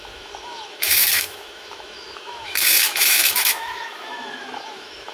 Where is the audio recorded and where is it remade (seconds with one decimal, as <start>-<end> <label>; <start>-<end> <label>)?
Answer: 0.0-5.1 remade